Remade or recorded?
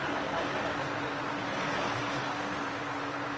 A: recorded